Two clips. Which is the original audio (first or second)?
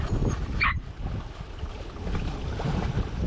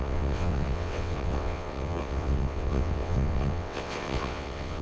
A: first